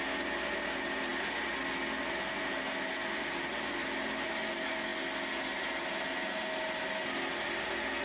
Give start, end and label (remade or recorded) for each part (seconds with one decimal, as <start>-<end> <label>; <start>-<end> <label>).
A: 0.0-8.0 recorded